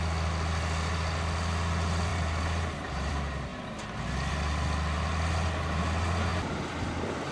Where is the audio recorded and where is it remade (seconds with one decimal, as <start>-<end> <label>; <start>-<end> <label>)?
0.0-2.1 recorded; 2.1-3.1 remade; 3.1-7.3 recorded